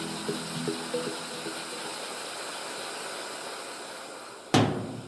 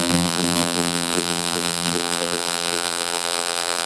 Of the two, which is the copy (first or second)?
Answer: second